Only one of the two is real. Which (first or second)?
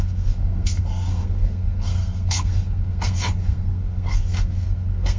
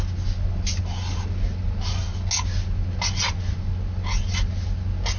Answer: second